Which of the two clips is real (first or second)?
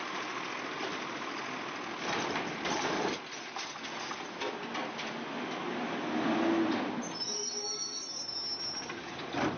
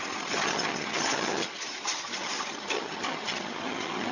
first